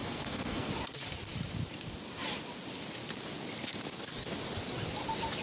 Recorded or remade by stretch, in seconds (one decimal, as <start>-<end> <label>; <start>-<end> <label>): 0.0-0.7 remade; 0.7-5.4 recorded